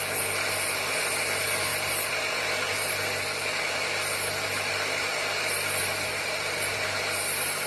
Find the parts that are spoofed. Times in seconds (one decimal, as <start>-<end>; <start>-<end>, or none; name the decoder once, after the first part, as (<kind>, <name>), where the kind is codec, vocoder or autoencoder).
none